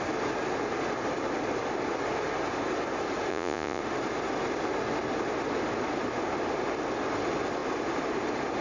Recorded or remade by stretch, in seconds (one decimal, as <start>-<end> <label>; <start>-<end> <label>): 0.0-3.3 recorded; 3.3-3.8 remade; 3.8-8.6 recorded